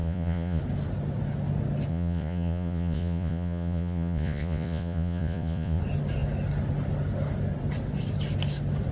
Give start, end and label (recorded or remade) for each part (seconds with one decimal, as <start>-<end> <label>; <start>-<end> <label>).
0.0-0.6 remade; 0.6-1.9 recorded; 1.9-5.8 remade; 5.8-8.9 recorded